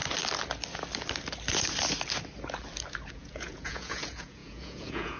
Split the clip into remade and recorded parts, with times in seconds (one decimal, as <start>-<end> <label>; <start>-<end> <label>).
0.0-3.1 recorded; 3.1-5.2 remade